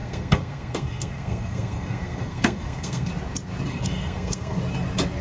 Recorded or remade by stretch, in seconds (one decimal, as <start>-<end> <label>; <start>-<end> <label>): 0.0-3.1 remade; 3.1-3.7 recorded; 3.7-4.6 remade; 4.6-5.2 recorded